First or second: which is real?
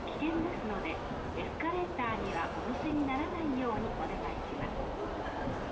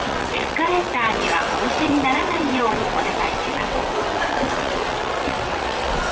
first